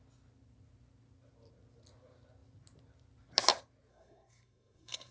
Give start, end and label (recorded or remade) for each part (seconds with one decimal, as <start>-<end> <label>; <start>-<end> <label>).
0.0-3.9 recorded; 3.9-5.1 remade